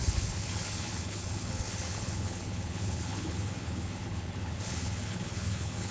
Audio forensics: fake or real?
fake